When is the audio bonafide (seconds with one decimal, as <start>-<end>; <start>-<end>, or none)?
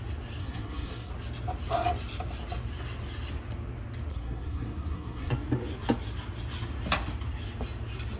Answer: 0.0-0.4; 1.1-4.1; 5.3-8.2